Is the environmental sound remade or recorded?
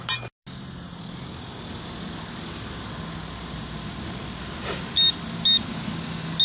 recorded